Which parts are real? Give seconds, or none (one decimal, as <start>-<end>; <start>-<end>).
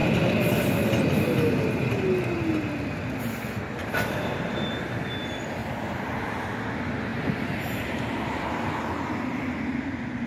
0.0-3.8; 4.9-5.6; 6.5-7.1; 8.4-10.3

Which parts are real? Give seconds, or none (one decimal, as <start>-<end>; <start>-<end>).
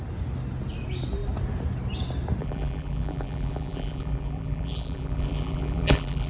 0.0-2.4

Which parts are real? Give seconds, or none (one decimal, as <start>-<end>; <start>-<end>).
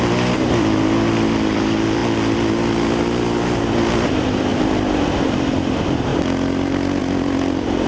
2.0-3.9; 4.5-5.0; 6.1-7.0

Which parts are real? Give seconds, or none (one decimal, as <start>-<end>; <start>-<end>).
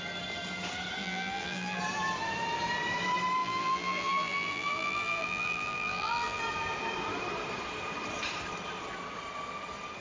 0.0-1.0; 1.8-3.4; 6.4-10.0